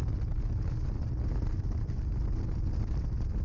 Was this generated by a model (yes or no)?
no